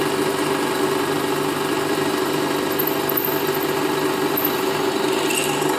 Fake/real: real